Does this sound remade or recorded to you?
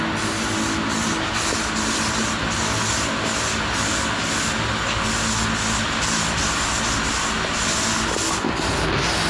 recorded